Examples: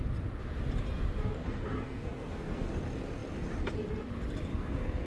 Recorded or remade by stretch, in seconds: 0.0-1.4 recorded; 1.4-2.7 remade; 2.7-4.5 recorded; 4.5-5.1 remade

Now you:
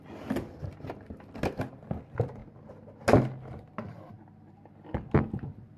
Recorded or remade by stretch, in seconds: 0.0-5.8 recorded

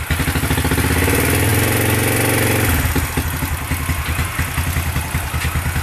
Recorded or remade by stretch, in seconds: 0.0-5.8 recorded

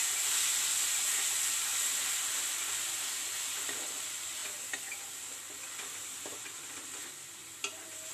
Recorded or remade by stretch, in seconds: 0.0-8.1 recorded